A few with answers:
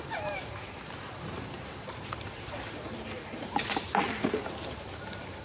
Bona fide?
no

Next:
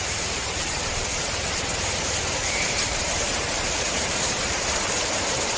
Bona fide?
no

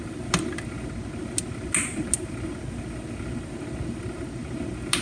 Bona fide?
yes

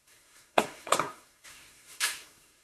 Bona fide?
no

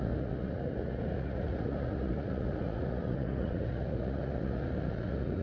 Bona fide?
no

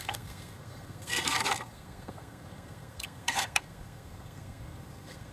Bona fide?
no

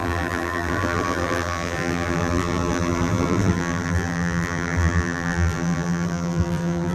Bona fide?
no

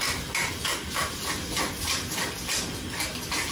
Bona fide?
yes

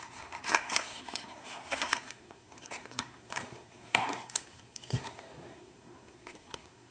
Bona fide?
no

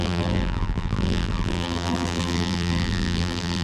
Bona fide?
no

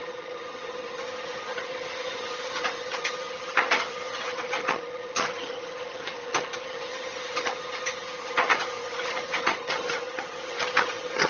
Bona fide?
no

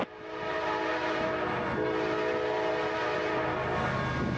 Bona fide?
yes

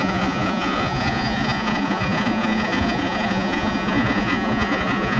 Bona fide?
no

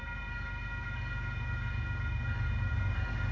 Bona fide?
yes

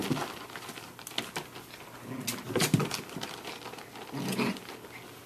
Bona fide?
yes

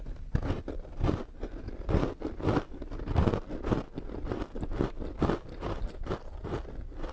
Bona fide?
yes